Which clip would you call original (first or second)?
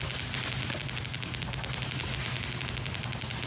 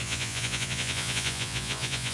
first